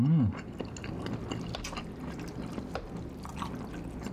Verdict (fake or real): real